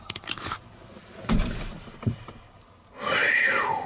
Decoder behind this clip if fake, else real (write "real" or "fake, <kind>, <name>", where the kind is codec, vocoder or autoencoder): fake, vocoder, BigVGAN v2